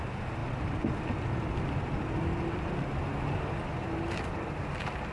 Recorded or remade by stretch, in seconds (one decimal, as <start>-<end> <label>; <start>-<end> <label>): 0.0-5.1 recorded